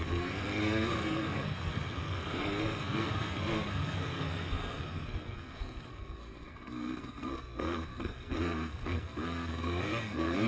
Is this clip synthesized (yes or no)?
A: yes